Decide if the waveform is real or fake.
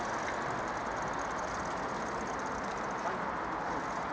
real